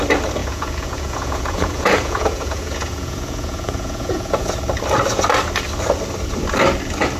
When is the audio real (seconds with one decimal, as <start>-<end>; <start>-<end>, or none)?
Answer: 0.0-0.4; 4.5-7.2